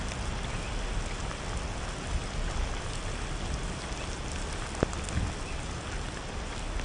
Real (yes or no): yes